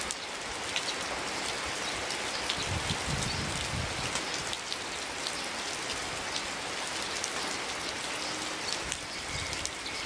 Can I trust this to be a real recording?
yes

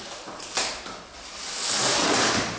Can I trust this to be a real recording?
yes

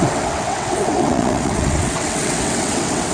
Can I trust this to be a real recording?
no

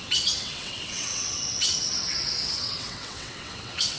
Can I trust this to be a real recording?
no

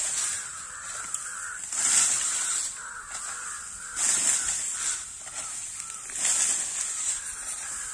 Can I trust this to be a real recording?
yes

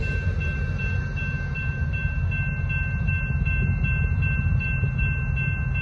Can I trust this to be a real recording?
yes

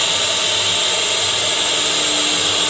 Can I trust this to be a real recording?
yes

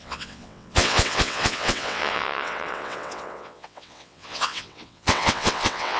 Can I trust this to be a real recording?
no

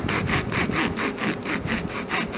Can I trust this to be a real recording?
yes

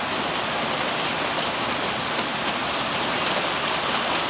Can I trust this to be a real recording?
yes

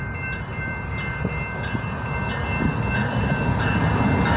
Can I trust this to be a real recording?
yes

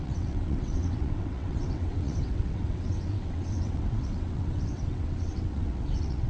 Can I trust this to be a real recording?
no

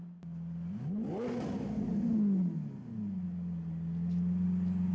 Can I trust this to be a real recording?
yes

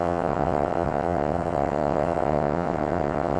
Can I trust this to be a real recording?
no